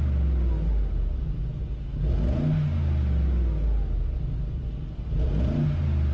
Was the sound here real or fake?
real